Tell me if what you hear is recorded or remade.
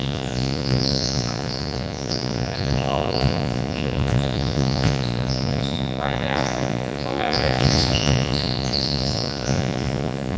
remade